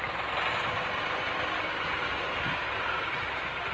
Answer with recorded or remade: recorded